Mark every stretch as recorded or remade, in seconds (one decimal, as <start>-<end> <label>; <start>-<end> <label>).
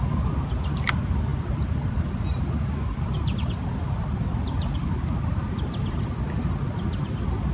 0.0-7.5 remade